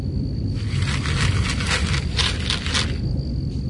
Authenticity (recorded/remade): recorded